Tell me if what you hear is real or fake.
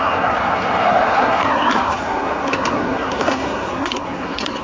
fake